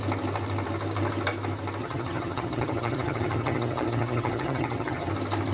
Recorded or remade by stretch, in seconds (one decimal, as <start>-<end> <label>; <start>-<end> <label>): 0.0-1.8 recorded; 1.8-5.1 remade; 5.1-5.5 recorded